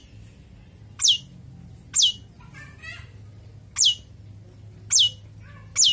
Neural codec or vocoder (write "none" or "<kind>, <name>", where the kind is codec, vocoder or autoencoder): none